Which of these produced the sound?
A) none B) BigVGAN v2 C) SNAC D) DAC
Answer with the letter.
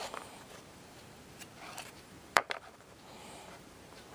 B